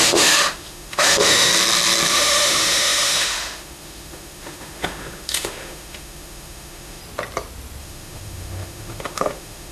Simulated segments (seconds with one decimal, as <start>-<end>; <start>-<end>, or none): 0.0-1.5; 2.1-7.0; 7.8-9.7